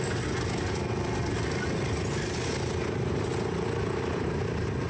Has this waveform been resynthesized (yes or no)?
no